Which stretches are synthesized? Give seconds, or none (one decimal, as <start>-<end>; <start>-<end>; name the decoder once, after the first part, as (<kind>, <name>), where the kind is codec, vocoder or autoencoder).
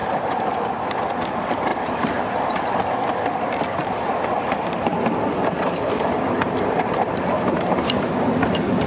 0.0-0.7 (vocoder, BigVGAN v2); 1.7-2.2; 3.8-8.1